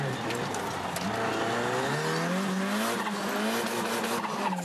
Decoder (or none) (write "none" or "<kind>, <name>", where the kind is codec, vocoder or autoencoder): none